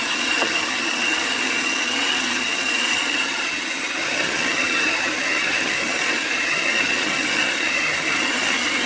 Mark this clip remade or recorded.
remade